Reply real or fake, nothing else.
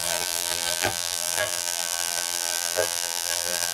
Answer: fake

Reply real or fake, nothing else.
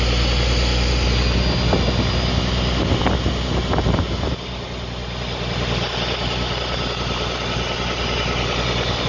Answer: real